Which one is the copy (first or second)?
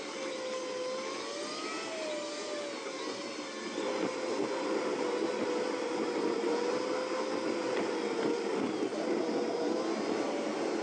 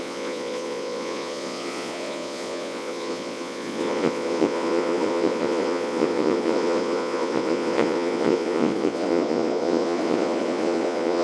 second